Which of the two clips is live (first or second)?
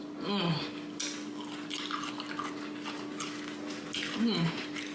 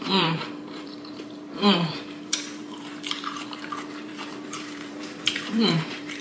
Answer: first